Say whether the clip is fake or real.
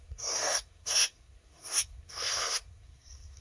fake